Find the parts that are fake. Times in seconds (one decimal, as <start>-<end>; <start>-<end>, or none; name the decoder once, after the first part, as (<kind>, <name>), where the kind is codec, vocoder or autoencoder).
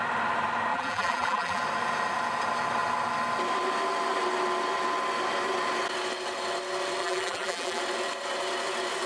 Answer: 0.7-1.6 (vocoder, BigVGAN v2); 7.0-7.8